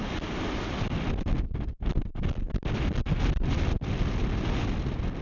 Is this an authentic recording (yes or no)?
yes